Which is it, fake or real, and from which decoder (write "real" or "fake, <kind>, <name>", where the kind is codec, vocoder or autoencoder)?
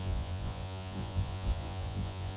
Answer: fake, vocoder, Vocos